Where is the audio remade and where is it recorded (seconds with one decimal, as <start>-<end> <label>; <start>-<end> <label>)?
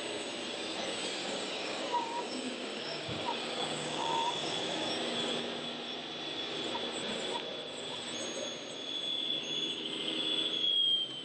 0.0-1.2 recorded; 1.2-4.9 remade; 4.9-11.2 recorded